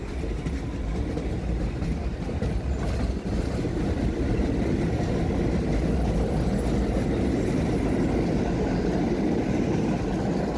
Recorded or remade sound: recorded